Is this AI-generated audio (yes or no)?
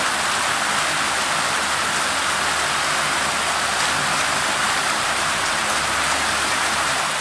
no